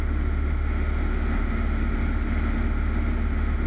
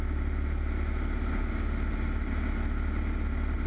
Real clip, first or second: second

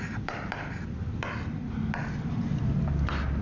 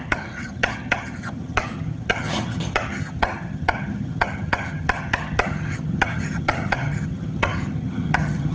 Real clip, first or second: first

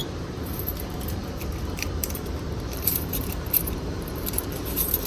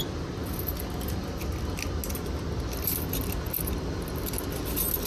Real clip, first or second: second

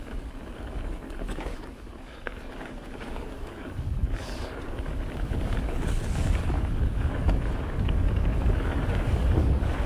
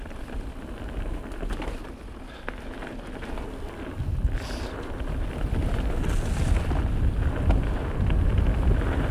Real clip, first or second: second